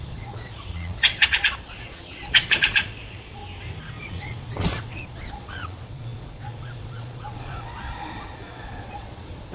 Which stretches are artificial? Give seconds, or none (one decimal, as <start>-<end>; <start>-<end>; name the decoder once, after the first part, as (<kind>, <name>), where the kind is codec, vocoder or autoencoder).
0.0-3.4 (vocoder, Vocos); 4.0-9.5